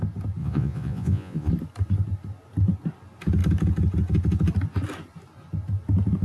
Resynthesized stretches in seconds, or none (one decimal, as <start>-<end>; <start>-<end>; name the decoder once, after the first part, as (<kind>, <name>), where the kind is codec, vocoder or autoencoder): 0.4-1.5 (vocoder, Vocos)